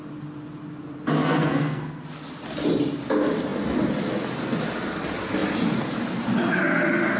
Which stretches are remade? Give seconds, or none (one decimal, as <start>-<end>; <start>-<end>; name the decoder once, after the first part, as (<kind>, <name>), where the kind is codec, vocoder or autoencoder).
1.2-2.0 (codec, SNAC)